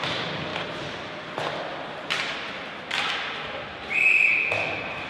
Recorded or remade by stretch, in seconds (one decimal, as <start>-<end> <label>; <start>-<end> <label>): 0.0-0.5 recorded; 0.5-1.2 remade; 1.2-5.1 recorded